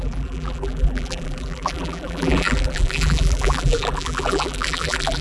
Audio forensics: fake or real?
fake